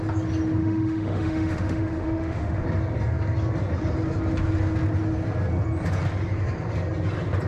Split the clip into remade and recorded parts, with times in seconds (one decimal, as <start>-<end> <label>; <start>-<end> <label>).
0.0-0.6 recorded; 0.6-2.6 remade; 2.6-7.5 recorded